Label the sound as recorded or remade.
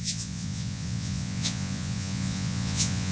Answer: remade